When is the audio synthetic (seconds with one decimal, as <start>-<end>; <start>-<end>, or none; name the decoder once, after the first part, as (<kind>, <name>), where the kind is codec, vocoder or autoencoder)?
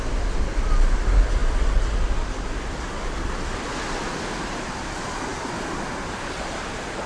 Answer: none